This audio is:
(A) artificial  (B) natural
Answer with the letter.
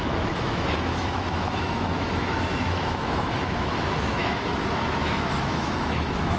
A